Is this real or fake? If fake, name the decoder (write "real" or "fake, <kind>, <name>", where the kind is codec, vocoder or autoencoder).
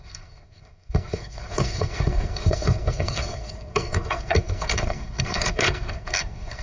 fake, codec, SNAC